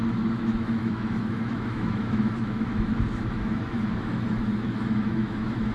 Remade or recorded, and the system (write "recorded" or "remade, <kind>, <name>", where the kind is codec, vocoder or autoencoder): remade, autoencoder, DAC-VAE